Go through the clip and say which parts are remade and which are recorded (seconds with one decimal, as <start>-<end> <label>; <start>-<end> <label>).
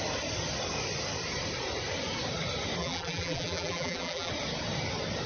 0.0-2.8 recorded; 2.8-4.3 remade; 4.3-5.3 recorded